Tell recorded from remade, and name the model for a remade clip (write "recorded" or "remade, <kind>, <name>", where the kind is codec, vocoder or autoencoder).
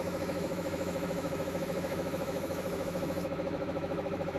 remade, autoencoder, DAC-VAE